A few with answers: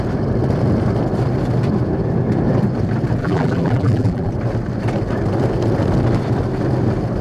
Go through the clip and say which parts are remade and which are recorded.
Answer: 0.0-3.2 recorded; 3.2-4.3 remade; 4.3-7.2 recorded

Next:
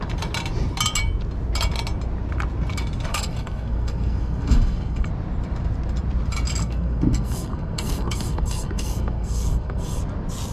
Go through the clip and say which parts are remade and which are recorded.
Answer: 0.0-3.1 recorded; 3.1-5.1 remade; 5.1-6.6 recorded; 6.6-10.0 remade; 10.0-10.5 recorded

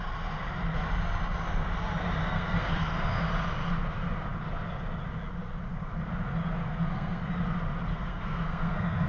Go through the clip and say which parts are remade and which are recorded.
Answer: 0.0-2.2 recorded; 2.2-2.7 remade; 2.7-6.6 recorded; 6.6-7.2 remade; 7.2-7.9 recorded; 7.9-9.1 remade

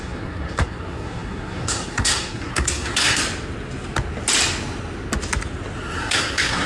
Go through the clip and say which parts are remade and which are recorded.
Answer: 0.0-3.2 remade; 3.2-6.0 recorded; 6.0-6.7 remade